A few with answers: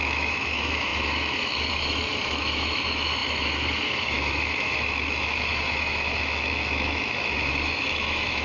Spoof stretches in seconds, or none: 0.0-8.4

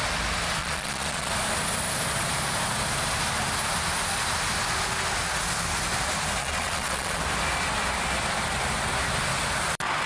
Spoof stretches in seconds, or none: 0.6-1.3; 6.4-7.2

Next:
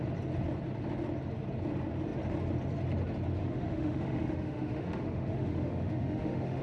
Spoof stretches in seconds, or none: 3.4-6.6

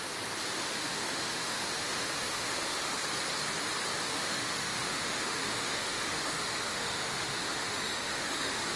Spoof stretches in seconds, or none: 0.6-3.0; 4.1-8.8